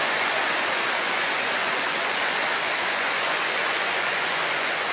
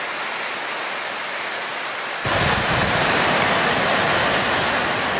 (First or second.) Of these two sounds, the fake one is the first